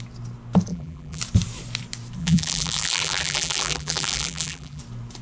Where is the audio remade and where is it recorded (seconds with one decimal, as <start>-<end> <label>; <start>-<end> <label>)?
0.0-0.7 recorded; 0.7-1.2 remade; 1.2-2.2 recorded; 2.2-4.8 remade; 4.8-5.2 recorded